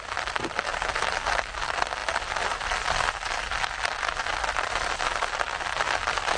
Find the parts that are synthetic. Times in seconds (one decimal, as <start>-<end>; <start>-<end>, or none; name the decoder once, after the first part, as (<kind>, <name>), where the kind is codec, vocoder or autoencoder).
none